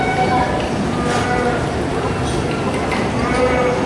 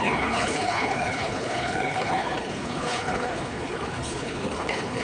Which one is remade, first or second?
second